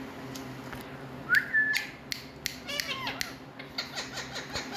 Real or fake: real